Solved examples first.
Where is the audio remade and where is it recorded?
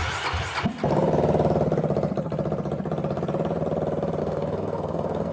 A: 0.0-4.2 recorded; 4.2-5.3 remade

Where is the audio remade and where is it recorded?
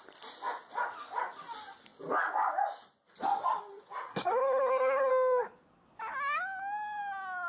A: 0.0-4.1 recorded; 4.1-5.1 remade; 5.1-7.5 recorded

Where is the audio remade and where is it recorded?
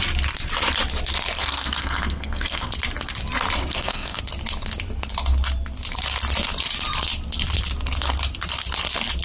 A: 0.0-1.4 recorded; 1.4-2.7 remade; 2.7-3.6 recorded; 3.6-4.2 remade; 4.2-9.2 recorded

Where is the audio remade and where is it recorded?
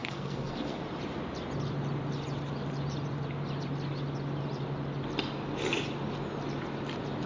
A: 0.0-0.8 remade; 0.8-7.3 recorded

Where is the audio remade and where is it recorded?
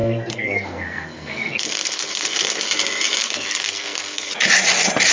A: 0.0-2.6 remade; 2.6-3.2 recorded; 3.2-4.3 remade; 4.3-5.1 recorded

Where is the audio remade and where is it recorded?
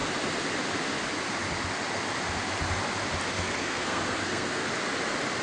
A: 0.0-3.3 recorded; 3.3-4.7 remade; 4.7-5.4 recorded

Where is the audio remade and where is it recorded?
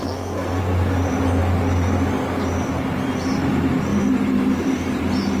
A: 0.0-0.6 remade; 0.6-5.4 recorded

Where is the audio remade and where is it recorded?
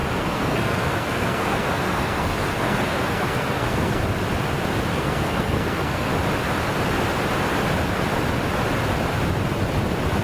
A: 0.0-4.0 remade; 4.0-4.9 recorded; 4.9-6.1 remade; 6.1-10.2 recorded